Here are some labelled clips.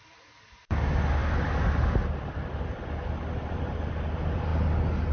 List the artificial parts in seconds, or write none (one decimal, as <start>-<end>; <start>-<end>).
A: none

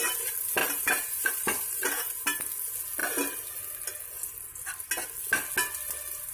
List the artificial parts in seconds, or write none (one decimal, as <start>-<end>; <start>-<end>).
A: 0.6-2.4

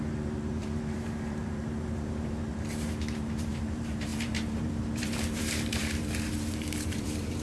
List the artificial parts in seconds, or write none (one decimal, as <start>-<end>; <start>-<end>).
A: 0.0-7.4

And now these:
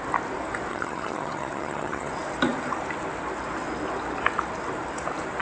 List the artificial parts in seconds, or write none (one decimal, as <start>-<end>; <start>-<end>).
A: 0.7-2.1

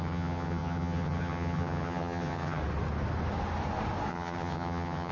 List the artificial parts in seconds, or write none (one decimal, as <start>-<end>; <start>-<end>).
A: 0.0-2.6; 4.1-5.1

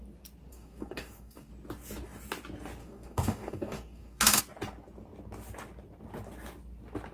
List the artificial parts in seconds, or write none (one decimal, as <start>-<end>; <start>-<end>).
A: 0.5-1.5; 2.8-4.4

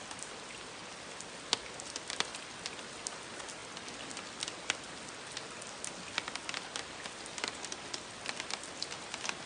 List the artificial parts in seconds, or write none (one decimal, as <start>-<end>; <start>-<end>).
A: none

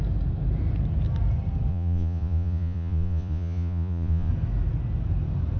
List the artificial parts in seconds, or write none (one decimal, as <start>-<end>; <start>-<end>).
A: 1.7-4.3